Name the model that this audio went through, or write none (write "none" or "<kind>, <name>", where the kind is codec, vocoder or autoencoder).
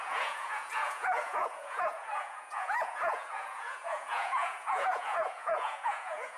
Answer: vocoder, Vocos